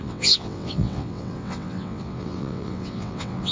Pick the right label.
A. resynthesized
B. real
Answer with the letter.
A